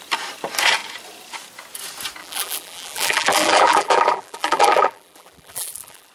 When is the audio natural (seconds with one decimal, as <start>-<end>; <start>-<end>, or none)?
0.0-2.2